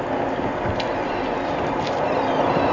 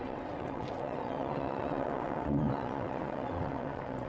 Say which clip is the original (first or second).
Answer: first